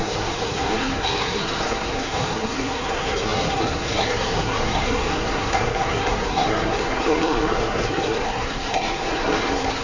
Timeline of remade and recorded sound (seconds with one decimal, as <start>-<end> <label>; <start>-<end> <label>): 0.0-9.8 remade